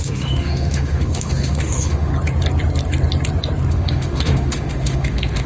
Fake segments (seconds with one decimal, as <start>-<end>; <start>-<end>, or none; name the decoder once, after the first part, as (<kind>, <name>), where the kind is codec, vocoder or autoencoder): 0.0-2.1 (autoencoder, DAC-VAE); 3.7-5.5